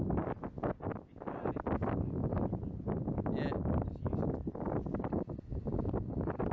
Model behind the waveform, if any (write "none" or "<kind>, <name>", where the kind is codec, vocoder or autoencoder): none